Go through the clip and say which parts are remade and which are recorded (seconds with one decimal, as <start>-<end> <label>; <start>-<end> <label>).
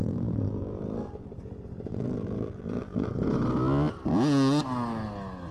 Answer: 0.0-1.3 remade; 1.3-1.9 recorded; 1.9-3.1 remade; 3.1-5.5 recorded